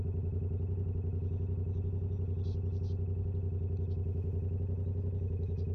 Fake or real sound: real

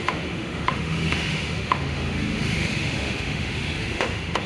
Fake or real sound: fake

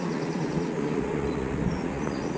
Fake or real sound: fake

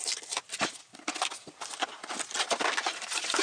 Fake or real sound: real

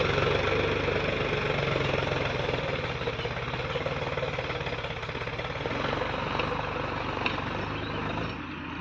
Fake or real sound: real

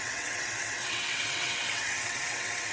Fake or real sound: fake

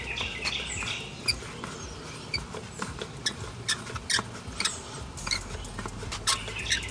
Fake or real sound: real